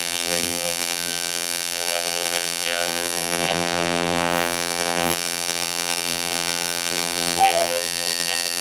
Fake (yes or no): yes